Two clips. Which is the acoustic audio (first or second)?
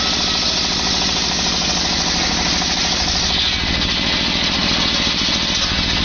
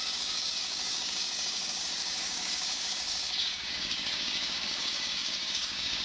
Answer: first